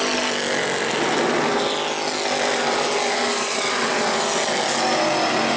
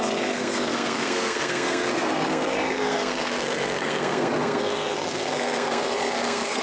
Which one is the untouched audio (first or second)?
first